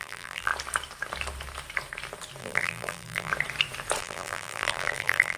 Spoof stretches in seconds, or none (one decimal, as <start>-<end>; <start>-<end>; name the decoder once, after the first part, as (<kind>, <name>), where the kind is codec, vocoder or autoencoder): 0.0-0.5 (vocoder, BigVGAN v2); 2.4-3.3; 4.0-5.4